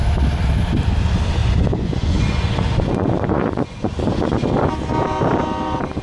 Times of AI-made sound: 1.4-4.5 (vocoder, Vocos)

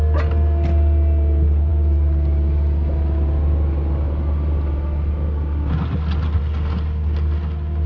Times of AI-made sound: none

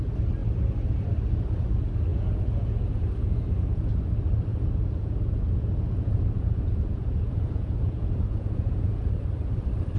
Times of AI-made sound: 2.1-3.9 (vocoder, Vocos); 4.5-9.1